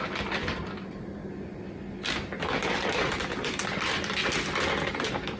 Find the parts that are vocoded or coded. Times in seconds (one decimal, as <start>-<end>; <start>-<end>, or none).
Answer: 0.0-1.2; 2.7-4.2; 4.9-5.4